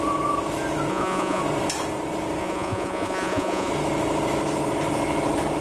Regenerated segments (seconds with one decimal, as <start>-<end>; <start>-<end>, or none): 0.9-1.4; 2.4-3.7